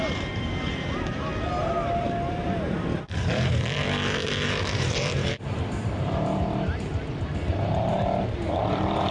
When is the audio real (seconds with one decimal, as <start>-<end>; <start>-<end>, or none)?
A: 1.3-2.3; 6.9-7.5

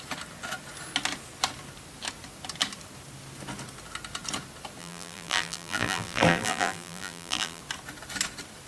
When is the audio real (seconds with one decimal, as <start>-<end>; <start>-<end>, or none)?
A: 0.0-4.8; 7.6-8.7

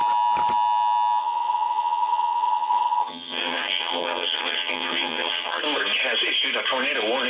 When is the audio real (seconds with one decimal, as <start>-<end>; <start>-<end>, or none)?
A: 0.0-1.2; 5.6-7.3

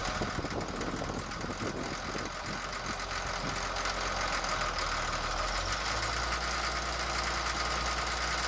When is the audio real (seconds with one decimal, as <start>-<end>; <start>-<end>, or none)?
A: 0.0-8.5

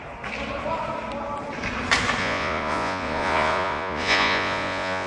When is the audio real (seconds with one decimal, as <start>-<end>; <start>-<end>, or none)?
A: 0.0-2.2

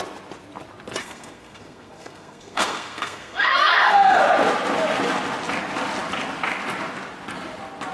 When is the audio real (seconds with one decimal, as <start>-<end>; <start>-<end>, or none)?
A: 0.0-1.0; 4.2-7.9